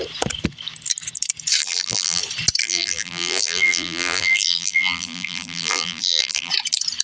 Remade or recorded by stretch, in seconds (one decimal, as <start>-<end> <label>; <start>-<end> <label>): 0.0-1.6 recorded; 1.6-2.2 remade; 2.2-2.6 recorded; 2.6-6.5 remade; 6.5-7.0 recorded